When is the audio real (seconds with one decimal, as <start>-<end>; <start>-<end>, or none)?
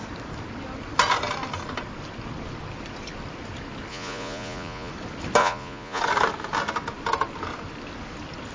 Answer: 0.0-3.9; 4.9-5.4; 6.0-8.5